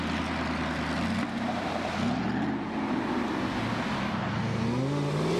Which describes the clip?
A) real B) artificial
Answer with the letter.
A